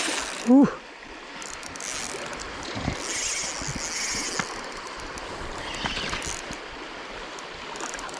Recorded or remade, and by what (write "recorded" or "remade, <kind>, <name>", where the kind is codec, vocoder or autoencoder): recorded